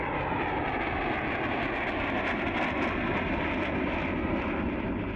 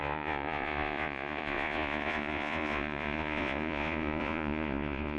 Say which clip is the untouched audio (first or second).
first